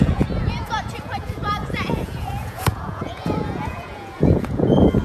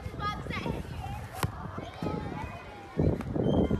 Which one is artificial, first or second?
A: first